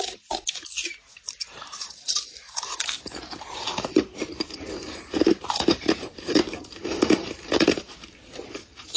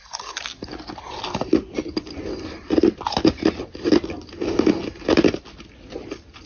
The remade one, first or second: first